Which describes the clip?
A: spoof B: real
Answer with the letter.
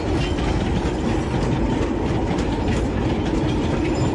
B